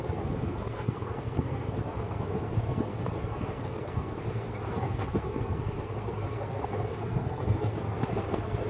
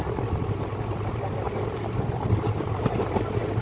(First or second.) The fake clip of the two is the first